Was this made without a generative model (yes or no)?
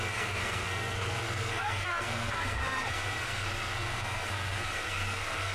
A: no